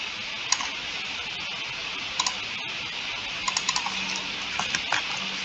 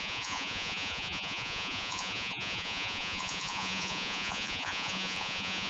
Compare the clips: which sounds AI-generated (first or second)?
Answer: second